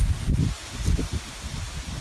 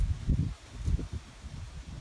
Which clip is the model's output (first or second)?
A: first